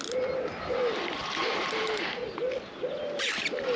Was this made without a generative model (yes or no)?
yes